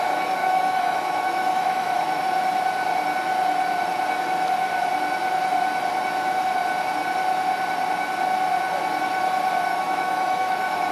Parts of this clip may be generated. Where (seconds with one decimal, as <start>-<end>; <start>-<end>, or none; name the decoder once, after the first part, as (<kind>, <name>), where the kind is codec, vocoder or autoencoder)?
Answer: 0.4-2.2 (autoencoder, DAC-VAE); 9.7-10.9